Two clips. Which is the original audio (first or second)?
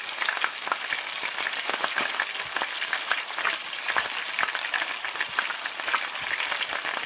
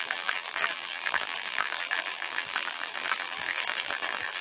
first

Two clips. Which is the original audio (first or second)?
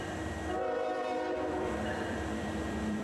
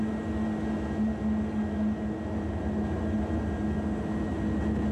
second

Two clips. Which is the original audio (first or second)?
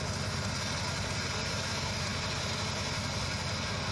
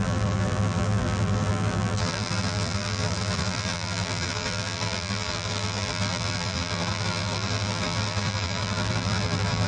first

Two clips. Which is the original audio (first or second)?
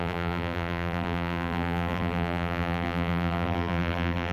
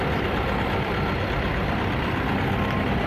second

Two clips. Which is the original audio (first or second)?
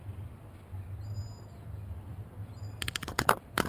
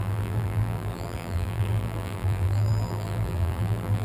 first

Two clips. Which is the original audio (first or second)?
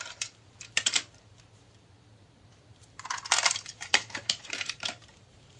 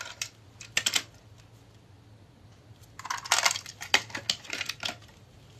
second